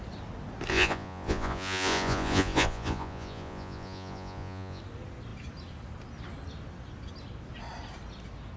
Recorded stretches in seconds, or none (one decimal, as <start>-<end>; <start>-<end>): 0.0-0.7; 4.8-8.6